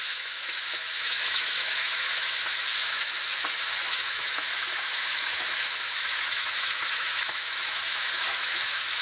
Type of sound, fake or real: fake